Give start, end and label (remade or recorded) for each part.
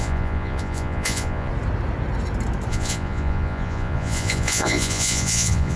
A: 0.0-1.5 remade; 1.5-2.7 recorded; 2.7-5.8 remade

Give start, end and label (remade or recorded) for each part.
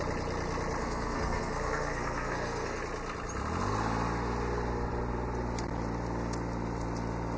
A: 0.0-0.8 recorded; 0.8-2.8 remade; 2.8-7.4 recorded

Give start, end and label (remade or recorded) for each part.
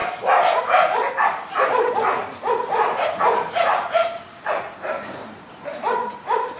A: 0.0-2.2 recorded; 2.2-6.6 remade